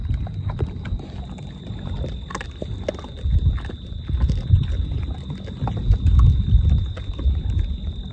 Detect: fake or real real